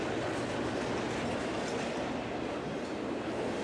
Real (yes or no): yes